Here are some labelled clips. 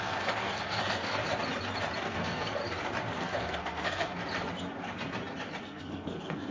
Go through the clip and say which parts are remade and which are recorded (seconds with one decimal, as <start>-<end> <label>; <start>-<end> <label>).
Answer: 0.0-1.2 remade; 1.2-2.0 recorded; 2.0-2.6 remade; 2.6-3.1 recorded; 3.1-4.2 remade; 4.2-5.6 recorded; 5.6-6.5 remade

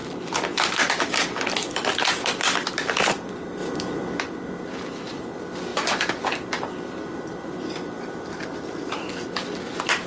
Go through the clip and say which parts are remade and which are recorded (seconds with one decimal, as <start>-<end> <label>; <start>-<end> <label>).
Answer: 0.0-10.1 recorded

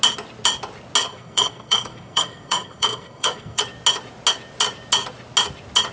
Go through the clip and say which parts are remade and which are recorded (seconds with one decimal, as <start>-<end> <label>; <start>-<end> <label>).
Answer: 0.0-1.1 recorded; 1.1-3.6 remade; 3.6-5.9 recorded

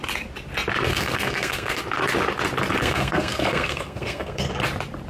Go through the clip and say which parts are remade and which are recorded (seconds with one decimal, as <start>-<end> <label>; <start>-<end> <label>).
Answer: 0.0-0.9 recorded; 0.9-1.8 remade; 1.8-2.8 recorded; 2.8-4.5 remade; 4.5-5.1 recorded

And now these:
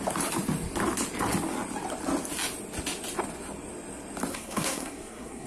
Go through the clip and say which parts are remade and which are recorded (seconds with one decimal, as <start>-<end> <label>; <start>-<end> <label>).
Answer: 0.0-4.3 recorded; 4.3-5.5 remade

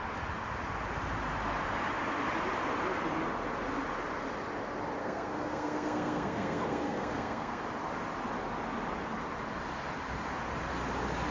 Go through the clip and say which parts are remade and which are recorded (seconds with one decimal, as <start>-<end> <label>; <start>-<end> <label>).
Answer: 0.0-5.0 recorded; 5.0-7.6 remade; 7.6-11.3 recorded

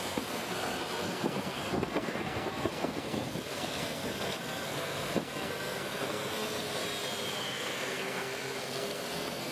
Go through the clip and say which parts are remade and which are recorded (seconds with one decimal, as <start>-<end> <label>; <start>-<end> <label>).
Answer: 0.0-6.8 remade; 6.8-7.3 recorded; 7.3-9.5 remade